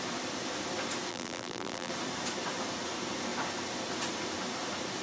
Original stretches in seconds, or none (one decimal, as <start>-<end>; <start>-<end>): 0.0-1.1; 1.9-5.0